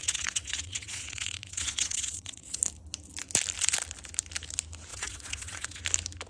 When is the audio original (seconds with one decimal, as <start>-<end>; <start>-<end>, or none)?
2.6-4.9; 5.8-6.3